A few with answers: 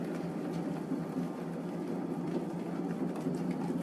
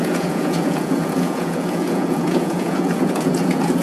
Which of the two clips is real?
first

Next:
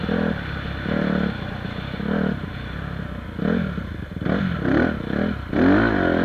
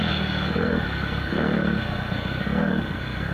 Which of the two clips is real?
first